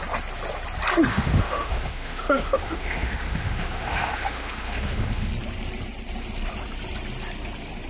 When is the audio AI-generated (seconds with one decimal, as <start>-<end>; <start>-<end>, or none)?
1.1-5.3